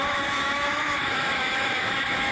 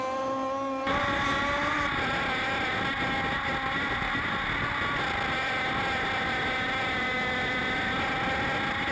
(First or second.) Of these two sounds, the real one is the second